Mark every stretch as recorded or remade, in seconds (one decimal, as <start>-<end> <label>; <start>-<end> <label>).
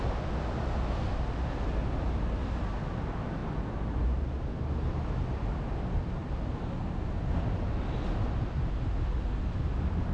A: 0.0-10.1 recorded